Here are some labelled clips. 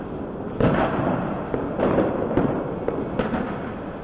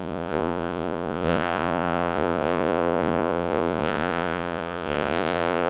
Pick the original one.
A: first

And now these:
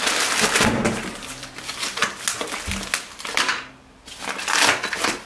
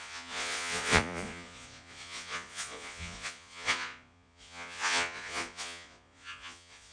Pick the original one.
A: first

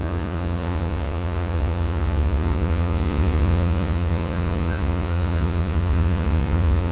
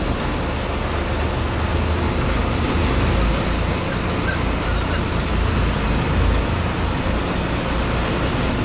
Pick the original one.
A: second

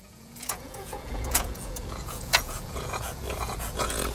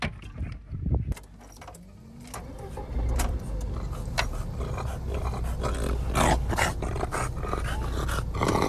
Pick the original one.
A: second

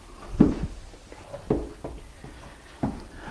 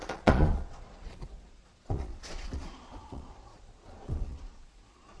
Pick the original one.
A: first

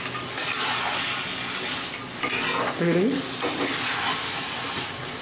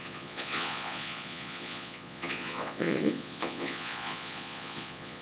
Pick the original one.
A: first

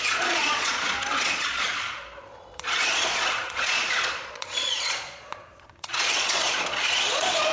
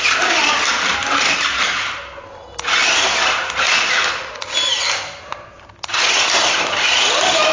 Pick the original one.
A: second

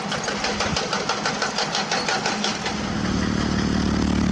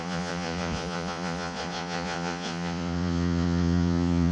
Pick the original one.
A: first